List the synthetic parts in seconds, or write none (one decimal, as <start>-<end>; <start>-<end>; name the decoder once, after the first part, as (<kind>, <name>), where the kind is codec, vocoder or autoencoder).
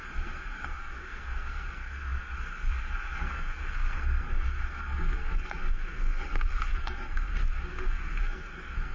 0.0-8.9 (codec, SNAC)